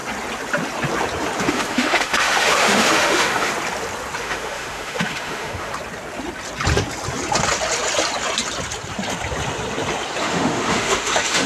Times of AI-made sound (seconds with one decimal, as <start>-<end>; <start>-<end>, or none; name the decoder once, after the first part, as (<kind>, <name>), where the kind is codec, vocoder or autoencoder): 1.5-3.5 (autoencoder, DAC-VAE); 4.2-5.7; 10.2-11.5